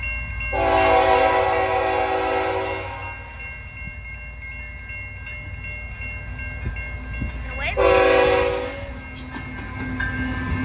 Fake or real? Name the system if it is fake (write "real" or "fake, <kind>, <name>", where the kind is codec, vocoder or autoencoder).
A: real